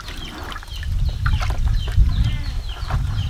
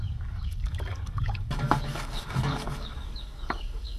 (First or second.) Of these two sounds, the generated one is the second